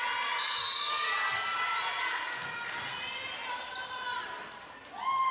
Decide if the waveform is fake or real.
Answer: real